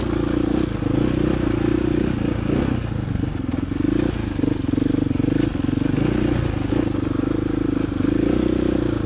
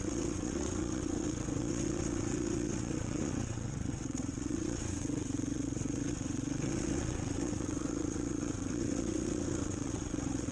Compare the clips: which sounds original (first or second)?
first